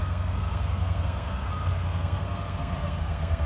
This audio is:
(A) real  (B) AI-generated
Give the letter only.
B